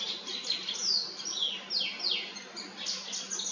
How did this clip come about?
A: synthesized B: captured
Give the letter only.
B